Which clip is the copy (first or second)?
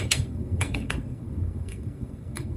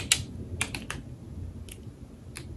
first